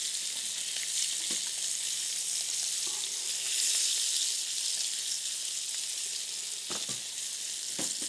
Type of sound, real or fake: real